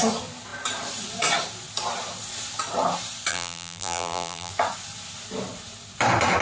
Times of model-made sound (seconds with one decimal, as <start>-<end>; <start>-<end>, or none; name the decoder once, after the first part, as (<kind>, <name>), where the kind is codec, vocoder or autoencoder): 3.3-4.5 (vocoder, BigVGAN v2)